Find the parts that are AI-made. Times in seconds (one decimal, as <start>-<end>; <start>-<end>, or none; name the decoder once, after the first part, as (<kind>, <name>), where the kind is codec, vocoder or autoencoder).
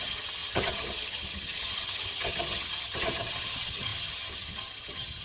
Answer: 0.0-5.2 (vocoder, HiFi-GAN)